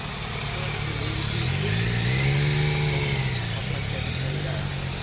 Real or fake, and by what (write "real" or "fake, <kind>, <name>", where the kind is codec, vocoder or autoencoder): real